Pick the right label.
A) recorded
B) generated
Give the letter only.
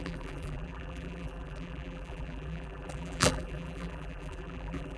B